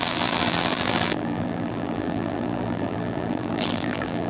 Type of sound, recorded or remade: remade